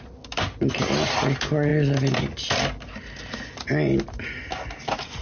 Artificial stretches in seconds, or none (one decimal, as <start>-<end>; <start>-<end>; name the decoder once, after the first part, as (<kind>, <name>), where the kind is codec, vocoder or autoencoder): none